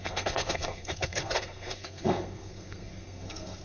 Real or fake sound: fake